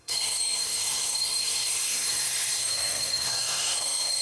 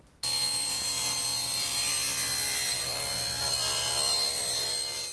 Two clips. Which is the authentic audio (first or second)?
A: second